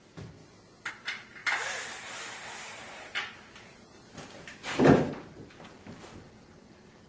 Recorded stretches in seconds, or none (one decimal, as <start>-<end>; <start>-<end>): 0.0-2.8